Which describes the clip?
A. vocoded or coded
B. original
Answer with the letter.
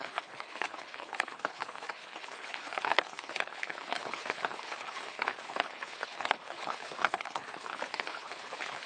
A